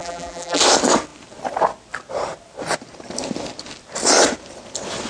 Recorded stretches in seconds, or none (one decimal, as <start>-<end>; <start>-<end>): 0.6-5.1

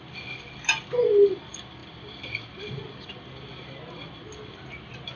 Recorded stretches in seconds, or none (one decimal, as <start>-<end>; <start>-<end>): 0.0-5.2

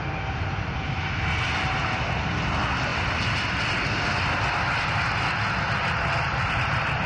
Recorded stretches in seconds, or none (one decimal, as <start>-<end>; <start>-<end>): 0.0-7.1

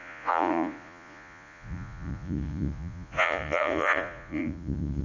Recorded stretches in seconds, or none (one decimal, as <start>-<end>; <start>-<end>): none

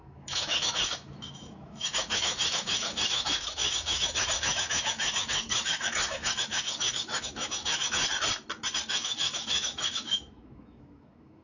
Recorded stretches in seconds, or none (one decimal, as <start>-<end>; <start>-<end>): 8.0-8.9